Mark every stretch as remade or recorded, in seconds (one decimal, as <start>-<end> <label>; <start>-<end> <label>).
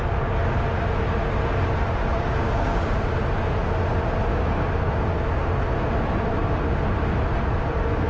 0.0-2.1 recorded; 2.1-2.9 remade; 2.9-4.3 recorded; 4.3-4.9 remade; 4.9-8.1 recorded